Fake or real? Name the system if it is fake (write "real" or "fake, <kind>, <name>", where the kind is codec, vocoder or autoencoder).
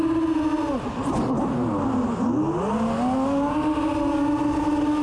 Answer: real